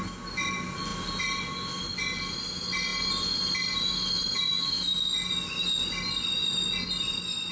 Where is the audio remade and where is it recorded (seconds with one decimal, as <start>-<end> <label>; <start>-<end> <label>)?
0.0-7.5 recorded